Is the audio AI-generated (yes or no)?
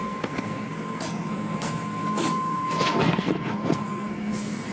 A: yes